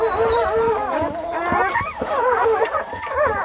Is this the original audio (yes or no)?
no